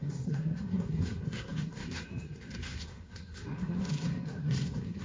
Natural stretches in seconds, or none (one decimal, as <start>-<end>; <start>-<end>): none